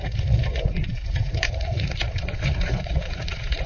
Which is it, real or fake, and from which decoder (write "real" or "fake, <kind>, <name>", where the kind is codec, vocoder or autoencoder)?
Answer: fake, vocoder, Vocos